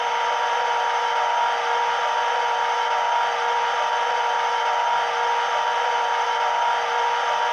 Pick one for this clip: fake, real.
fake